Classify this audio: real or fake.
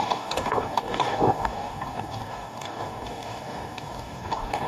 fake